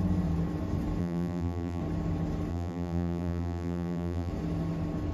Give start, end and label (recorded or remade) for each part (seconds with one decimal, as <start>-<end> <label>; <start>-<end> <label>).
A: 0.0-1.0 recorded; 1.0-1.8 remade; 1.8-2.5 recorded; 2.5-4.3 remade; 4.3-5.1 recorded

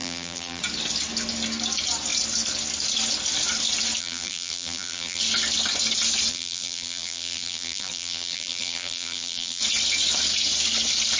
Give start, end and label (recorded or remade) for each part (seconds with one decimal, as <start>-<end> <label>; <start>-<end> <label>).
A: 0.0-0.6 remade; 0.6-4.0 recorded; 4.0-5.2 remade; 5.2-6.3 recorded; 6.3-9.6 remade; 9.6-11.2 recorded

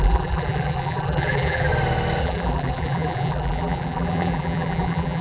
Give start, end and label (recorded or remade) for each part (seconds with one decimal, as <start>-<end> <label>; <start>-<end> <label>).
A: 0.0-1.7 remade; 1.7-2.2 recorded; 2.2-5.2 remade

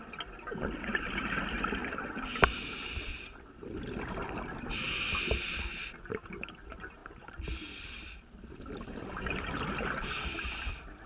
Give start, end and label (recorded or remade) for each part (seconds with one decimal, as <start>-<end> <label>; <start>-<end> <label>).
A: 0.0-11.1 recorded

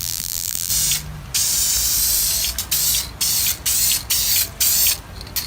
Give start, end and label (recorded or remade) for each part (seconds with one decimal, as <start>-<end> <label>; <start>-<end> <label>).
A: 0.0-0.7 remade; 0.7-5.5 recorded

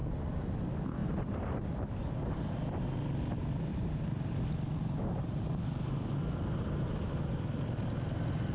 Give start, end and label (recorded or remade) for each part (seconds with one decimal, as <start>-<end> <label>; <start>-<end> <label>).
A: 0.0-0.5 remade; 0.5-1.0 recorded; 1.0-2.2 remade; 2.2-3.7 recorded; 3.7-4.3 remade; 4.3-8.5 recorded

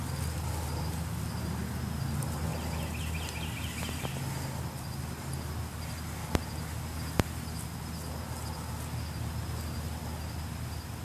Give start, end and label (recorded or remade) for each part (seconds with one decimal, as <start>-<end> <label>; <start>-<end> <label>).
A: 0.0-2.5 recorded; 2.5-4.0 remade; 4.0-11.0 recorded

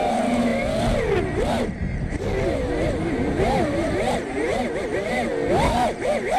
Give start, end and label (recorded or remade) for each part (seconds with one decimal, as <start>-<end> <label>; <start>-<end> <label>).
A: 0.0-0.5 remade; 0.5-3.0 recorded; 3.0-4.5 remade; 4.5-5.5 recorded; 5.5-6.4 remade